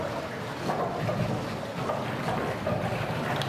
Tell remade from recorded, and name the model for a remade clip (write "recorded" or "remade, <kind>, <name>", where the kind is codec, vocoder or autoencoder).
recorded